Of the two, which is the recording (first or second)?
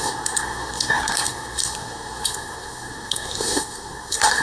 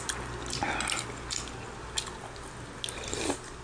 second